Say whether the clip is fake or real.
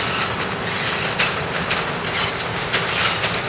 real